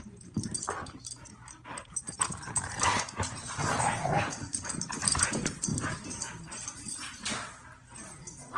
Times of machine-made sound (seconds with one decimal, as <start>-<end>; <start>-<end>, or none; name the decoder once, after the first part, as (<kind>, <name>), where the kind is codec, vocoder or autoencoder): 0.0-5.7 (vocoder, BigVGAN v2)